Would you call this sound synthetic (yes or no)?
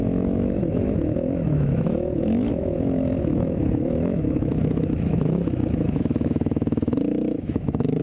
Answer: yes